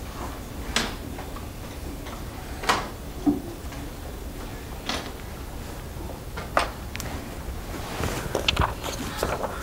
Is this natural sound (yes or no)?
yes